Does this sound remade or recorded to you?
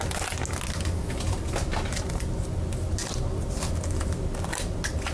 recorded